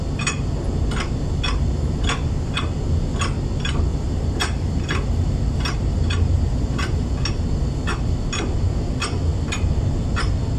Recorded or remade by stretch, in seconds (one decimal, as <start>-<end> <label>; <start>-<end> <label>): 0.0-3.9 recorded; 3.9-7.1 remade; 7.1-10.6 recorded